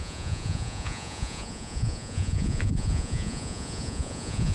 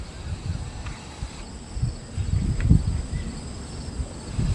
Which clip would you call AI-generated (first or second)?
first